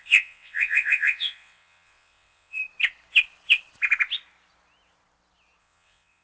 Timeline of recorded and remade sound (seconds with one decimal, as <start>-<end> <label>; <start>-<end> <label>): 0.0-2.6 remade; 2.6-5.6 recorded; 5.6-6.2 remade